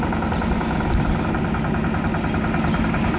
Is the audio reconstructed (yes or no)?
no